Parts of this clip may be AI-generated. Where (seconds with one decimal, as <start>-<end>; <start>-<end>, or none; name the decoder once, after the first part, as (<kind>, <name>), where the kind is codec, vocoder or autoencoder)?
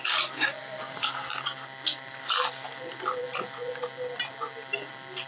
0.8-1.3 (codec, DAC)